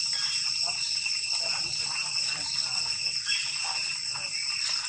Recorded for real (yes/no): yes